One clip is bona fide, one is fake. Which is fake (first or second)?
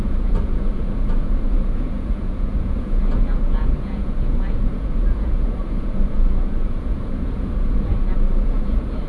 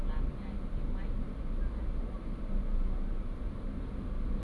first